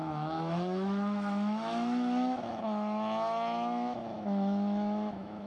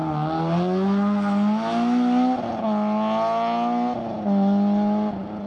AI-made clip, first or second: first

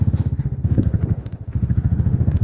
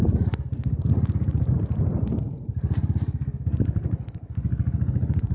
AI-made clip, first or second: first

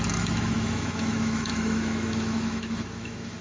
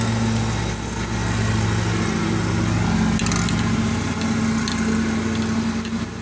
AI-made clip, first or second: first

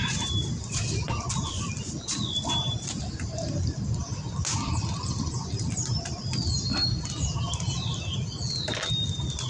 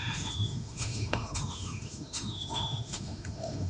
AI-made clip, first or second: second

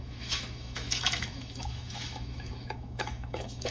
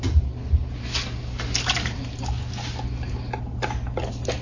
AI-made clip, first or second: first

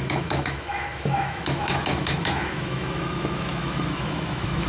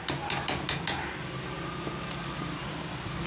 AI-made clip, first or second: first